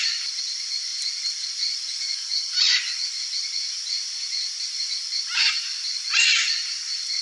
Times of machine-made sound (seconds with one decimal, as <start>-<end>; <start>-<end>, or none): none